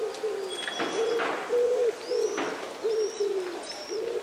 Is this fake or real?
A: real